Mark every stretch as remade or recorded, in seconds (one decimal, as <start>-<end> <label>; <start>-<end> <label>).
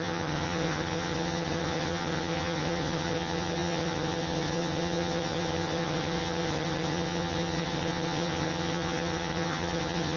0.0-10.2 remade